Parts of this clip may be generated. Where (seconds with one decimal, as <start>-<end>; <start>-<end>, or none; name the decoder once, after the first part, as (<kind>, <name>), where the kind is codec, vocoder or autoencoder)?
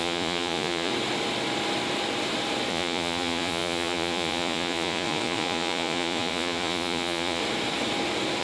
0.0-0.9 (vocoder, Vocos); 2.7-7.4